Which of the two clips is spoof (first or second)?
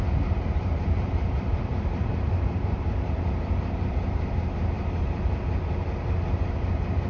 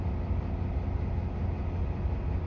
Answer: first